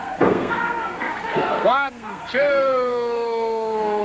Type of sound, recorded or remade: remade